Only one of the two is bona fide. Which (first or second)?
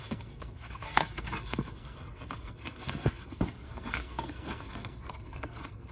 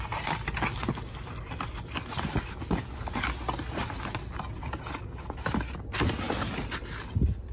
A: second